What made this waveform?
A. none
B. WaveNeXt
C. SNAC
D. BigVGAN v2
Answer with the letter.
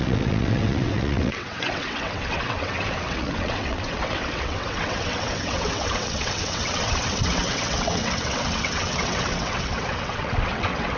B